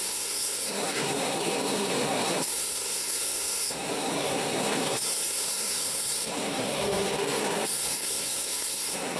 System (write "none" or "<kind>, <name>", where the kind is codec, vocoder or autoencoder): codec, SNAC